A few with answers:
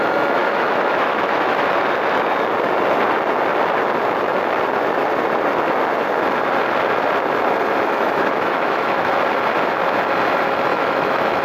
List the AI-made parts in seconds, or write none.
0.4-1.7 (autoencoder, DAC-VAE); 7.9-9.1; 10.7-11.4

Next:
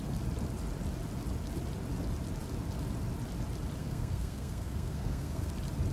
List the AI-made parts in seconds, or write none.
3.8-5.5 (codec, SNAC)